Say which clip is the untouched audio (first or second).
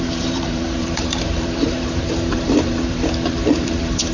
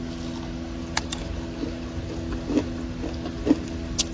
second